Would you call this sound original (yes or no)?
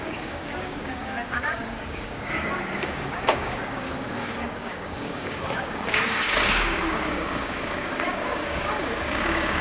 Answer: no